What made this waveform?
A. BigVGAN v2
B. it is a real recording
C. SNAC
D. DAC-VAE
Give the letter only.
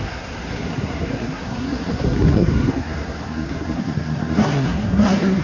C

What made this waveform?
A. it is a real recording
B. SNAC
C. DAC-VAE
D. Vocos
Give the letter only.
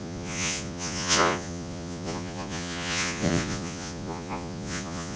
D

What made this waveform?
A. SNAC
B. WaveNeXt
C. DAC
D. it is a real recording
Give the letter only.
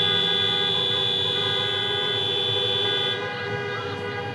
D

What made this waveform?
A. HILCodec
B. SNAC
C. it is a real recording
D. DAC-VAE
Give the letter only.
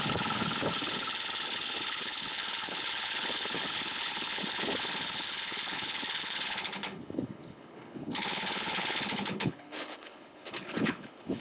A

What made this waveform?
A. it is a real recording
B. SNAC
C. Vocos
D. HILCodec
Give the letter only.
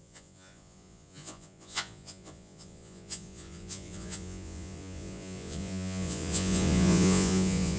C